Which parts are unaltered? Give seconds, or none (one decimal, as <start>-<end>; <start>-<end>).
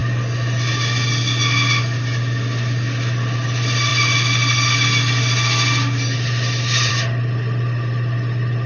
0.0-8.7